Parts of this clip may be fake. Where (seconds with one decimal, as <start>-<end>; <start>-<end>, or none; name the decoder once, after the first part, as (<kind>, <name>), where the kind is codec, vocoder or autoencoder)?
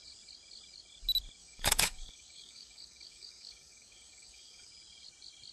1.4-4.7 (codec, DAC)